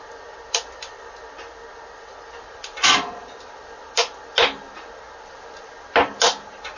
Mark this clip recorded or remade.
recorded